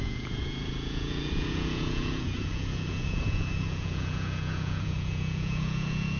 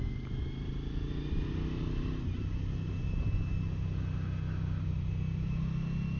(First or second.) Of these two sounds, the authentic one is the second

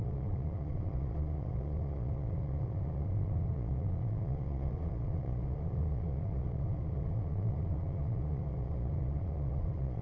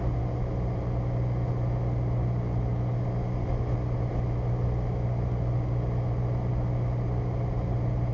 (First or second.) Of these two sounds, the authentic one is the second